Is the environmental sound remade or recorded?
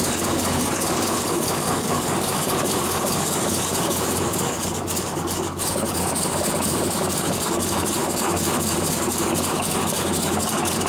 remade